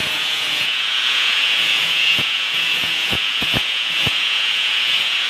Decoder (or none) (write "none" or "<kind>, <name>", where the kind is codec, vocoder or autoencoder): vocoder, Vocos